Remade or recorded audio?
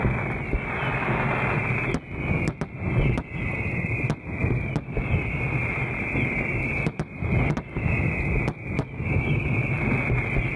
recorded